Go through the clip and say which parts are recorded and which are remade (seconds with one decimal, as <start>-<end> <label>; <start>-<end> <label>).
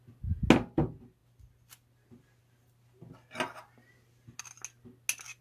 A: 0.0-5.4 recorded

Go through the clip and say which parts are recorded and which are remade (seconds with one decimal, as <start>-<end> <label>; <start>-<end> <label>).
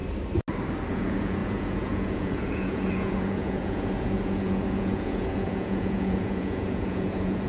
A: 0.0-0.9 recorded; 0.9-7.5 remade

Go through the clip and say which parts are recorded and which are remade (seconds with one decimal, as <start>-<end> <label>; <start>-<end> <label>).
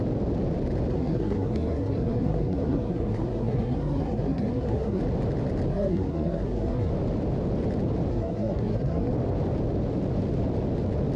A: 0.0-0.9 recorded; 0.9-5.0 remade; 5.0-5.7 recorded; 5.7-6.9 remade; 6.9-8.1 recorded; 8.1-9.1 remade; 9.1-11.2 recorded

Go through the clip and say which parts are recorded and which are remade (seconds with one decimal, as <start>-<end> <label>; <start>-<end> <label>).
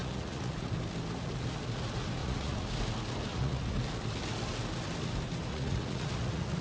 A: 0.0-0.7 remade; 0.7-2.2 recorded; 2.2-2.7 remade; 2.7-3.3 recorded; 3.3-3.8 remade; 3.8-5.5 recorded; 5.5-6.6 remade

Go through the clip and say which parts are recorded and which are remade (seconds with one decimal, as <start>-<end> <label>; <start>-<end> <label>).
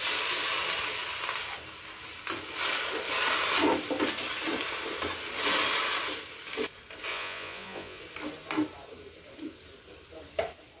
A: 0.0-7.1 recorded; 7.1-8.0 remade; 8.0-10.8 recorded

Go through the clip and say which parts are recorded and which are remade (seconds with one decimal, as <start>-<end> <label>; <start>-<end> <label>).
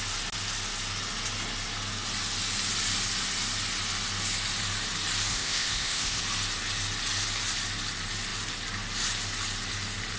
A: 0.0-5.3 recorded; 5.3-6.2 remade; 6.2-10.2 recorded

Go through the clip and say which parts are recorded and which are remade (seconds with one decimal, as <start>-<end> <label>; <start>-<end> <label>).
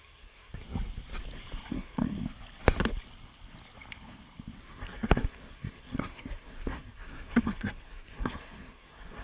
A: 0.0-0.6 remade; 0.6-1.7 recorded; 1.7-2.2 remade; 2.2-4.6 recorded; 4.6-9.2 remade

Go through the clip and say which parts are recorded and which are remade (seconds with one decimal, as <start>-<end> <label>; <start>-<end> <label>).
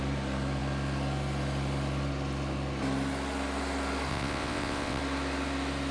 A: 0.0-4.1 recorded; 4.1-5.0 remade; 5.0-5.9 recorded